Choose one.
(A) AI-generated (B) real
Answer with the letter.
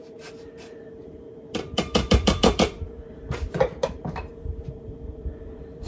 A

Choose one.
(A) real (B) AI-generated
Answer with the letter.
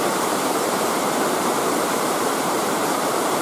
B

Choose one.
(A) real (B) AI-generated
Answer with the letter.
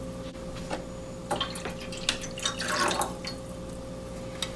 A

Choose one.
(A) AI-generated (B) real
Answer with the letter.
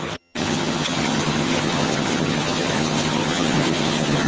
A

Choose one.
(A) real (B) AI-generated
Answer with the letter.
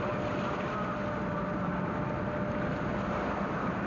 A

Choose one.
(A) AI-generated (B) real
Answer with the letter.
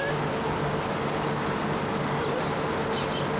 B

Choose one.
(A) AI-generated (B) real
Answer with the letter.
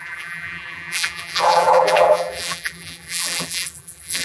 A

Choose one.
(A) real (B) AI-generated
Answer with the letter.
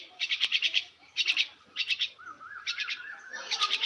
B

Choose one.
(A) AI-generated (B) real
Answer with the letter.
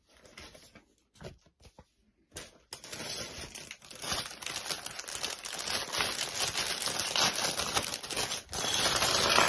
B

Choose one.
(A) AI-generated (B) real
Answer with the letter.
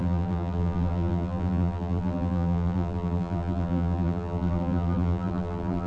A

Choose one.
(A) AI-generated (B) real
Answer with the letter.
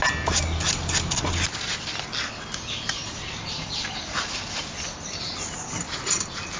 B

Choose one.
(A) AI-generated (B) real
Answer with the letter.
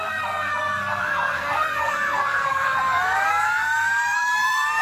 A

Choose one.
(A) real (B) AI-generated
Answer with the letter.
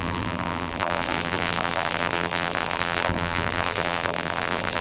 B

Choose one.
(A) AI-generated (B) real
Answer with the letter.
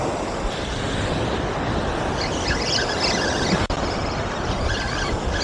B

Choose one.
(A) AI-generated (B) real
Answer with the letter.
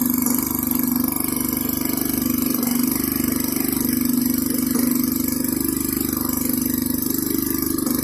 B